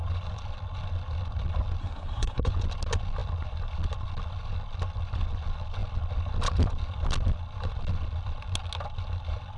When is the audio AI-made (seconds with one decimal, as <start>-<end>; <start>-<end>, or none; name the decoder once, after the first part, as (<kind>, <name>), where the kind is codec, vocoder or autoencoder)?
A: 1.8-2.5 (codec, SNAC)